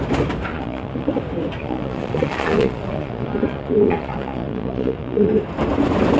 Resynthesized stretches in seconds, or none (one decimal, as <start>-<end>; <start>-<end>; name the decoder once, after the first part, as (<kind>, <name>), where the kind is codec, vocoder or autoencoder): 0.5-1.2 (vocoder, Vocos); 1.6-5.3